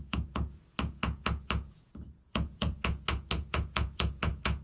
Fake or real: fake